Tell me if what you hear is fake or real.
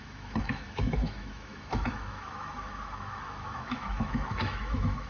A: fake